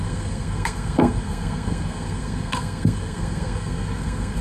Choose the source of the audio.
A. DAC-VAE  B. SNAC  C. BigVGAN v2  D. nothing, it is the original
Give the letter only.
B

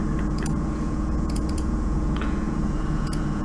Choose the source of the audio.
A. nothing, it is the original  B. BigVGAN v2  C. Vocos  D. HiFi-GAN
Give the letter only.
C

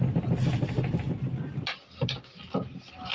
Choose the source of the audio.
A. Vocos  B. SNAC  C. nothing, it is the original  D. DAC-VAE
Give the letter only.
C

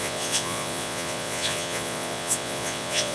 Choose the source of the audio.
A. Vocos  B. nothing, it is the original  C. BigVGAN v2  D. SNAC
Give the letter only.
A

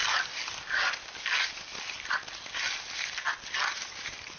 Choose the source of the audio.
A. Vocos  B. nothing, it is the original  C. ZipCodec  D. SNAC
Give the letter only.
B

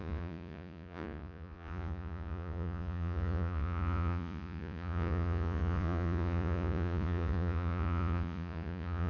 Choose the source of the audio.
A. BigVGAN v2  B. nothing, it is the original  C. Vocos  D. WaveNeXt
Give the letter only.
C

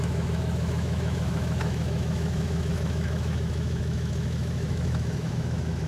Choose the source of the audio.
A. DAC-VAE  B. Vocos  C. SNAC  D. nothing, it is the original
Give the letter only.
A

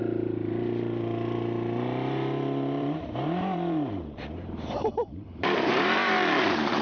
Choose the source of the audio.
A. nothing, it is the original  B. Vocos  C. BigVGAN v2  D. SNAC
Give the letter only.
C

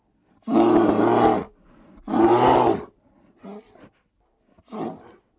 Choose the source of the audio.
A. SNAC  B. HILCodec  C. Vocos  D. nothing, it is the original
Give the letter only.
D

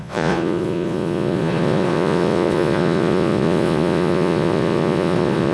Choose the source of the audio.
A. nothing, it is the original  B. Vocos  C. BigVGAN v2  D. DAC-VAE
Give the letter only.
B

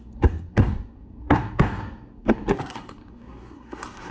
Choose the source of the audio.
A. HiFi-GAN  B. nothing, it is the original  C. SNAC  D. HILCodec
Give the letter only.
C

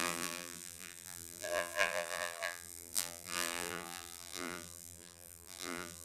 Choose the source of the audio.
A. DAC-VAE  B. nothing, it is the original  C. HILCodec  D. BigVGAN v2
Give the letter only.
D